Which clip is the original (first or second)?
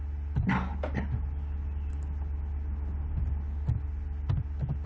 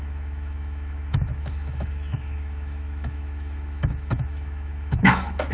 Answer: first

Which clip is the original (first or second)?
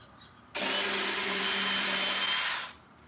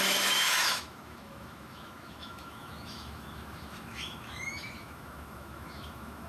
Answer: first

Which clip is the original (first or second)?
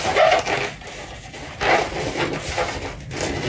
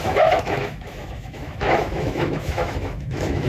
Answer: first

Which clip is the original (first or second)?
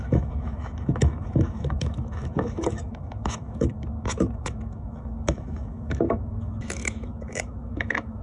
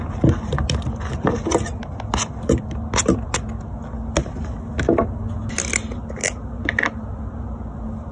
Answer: second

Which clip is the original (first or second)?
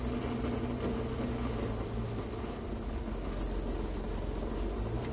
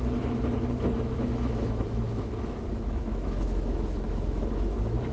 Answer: first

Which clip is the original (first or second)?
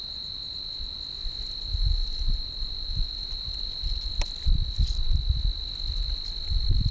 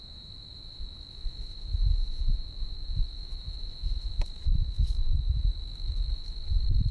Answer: first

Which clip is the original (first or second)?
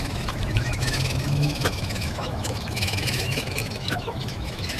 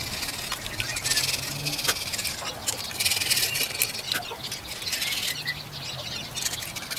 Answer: second